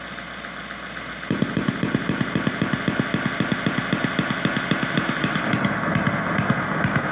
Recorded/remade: recorded